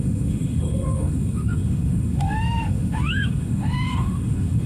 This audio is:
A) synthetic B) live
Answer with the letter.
A